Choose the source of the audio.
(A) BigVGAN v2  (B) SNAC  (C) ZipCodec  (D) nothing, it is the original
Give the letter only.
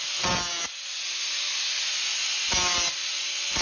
D